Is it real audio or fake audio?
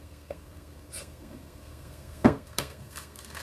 fake